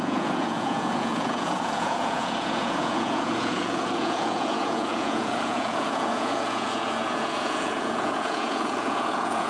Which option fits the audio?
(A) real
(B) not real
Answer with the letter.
B